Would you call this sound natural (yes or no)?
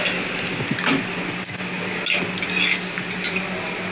yes